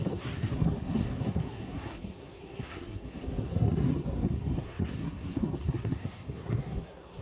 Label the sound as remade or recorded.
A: remade